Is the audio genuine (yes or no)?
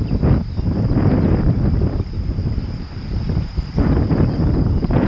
yes